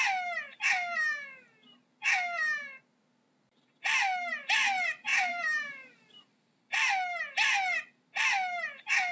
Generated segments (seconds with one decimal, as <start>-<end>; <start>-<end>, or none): 5.1-6.6